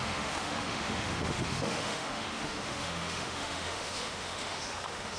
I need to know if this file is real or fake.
fake